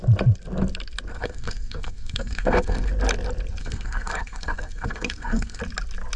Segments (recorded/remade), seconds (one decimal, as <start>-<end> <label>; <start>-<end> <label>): 0.0-1.1 recorded; 1.1-2.9 remade; 2.9-3.6 recorded; 3.6-5.6 remade; 5.6-6.2 recorded